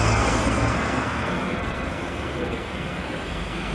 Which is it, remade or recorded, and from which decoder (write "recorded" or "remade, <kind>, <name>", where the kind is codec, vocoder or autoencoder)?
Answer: remade, codec, SNAC